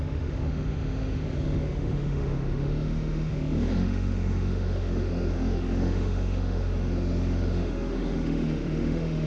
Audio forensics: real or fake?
fake